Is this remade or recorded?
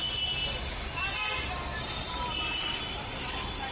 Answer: recorded